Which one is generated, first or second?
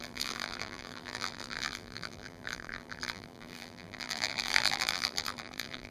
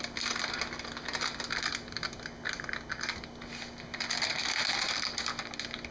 first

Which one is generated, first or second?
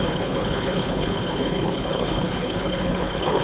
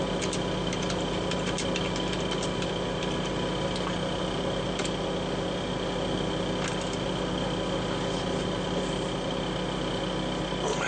first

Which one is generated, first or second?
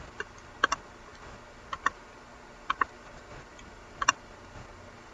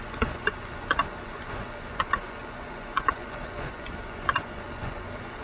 second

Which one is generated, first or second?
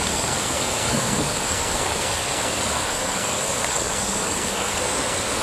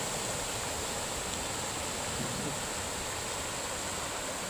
first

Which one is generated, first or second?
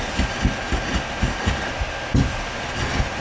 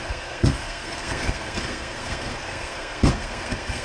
second